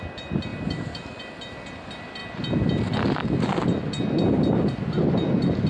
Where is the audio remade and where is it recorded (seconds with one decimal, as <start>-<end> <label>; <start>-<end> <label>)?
0.0-2.2 remade; 2.2-5.7 recorded